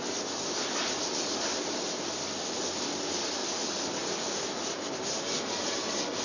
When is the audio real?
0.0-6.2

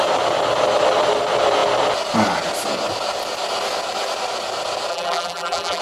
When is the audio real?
0.0-4.9

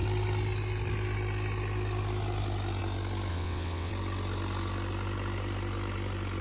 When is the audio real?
0.0-3.3; 3.9-6.4

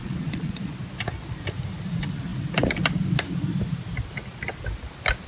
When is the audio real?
0.7-5.3

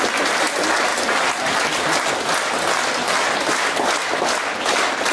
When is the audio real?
0.0-0.9; 1.8-2.8; 3.3-5.1